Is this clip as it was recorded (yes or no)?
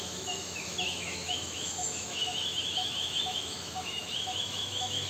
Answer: no